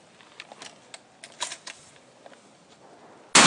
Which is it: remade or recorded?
recorded